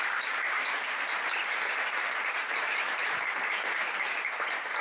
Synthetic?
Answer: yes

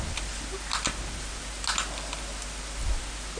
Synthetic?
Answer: no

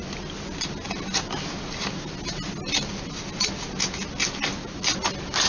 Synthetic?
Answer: no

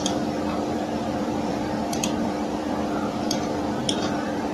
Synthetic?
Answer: yes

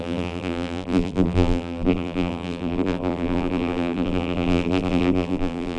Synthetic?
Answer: yes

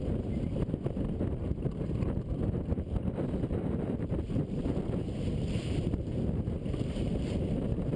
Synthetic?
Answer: yes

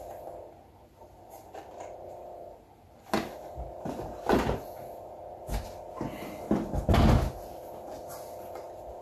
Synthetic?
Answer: no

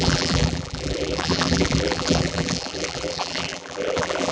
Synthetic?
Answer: yes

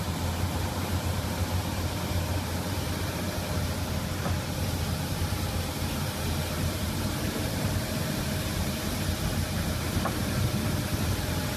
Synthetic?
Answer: yes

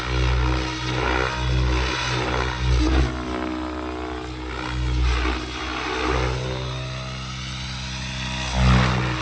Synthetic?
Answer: no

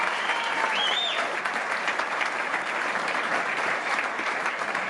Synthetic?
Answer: yes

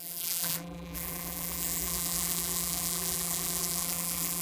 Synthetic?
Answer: yes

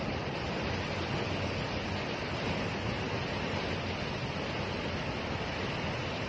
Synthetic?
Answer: no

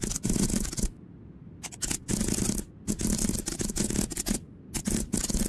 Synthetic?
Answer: no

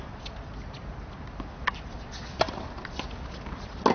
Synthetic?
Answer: no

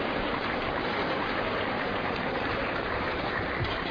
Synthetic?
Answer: yes